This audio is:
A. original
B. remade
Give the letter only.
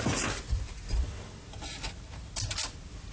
A